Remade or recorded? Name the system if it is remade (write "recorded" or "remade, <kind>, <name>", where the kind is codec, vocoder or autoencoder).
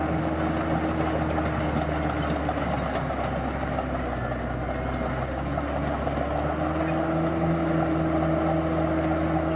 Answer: recorded